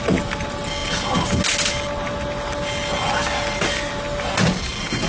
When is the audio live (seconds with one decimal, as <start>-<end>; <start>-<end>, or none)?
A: 0.0-5.1